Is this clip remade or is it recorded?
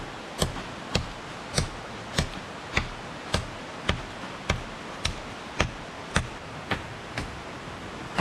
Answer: recorded